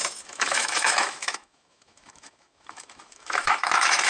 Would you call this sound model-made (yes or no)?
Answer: yes